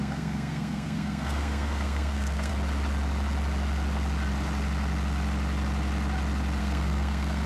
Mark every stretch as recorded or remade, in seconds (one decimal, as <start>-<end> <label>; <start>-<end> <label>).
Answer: 0.0-2.5 remade; 2.5-6.6 recorded; 6.6-7.5 remade